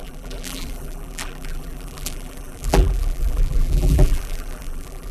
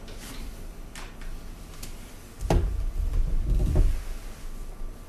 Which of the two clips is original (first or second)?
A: second